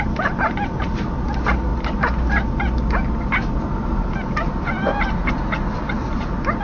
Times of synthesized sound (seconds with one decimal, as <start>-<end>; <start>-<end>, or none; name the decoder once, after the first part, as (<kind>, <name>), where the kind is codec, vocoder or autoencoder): none